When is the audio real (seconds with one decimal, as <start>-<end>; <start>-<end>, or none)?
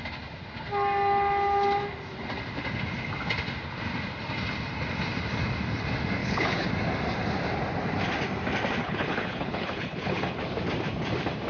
0.0-6.2; 6.7-8.8; 10.4-11.5